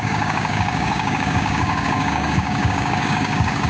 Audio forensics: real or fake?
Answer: fake